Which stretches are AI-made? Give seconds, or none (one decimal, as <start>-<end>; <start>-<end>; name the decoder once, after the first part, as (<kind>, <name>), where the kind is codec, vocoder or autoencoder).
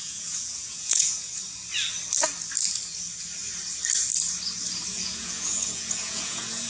0.0-1.4 (vocoder, Vocos); 4.9-6.7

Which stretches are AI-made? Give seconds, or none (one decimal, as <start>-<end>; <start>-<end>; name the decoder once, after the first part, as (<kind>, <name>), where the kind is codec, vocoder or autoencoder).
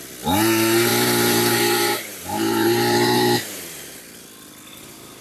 0.9-4.0 (vocoder, BigVGAN v2)